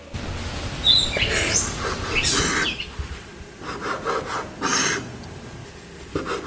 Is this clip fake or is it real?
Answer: real